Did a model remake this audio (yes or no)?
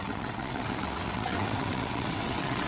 yes